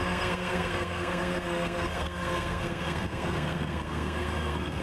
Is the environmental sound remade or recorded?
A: remade